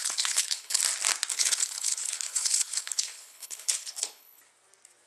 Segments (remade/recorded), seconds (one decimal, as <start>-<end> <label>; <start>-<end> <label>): 0.0-0.8 remade; 0.8-1.3 recorded; 1.3-4.4 remade; 4.4-5.1 recorded